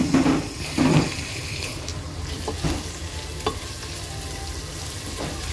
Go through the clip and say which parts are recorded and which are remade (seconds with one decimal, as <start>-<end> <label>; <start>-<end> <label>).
0.0-1.3 recorded; 1.3-1.9 remade; 1.9-5.5 recorded